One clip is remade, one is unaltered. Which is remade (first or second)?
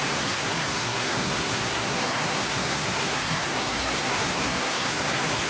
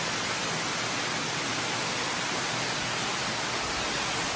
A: first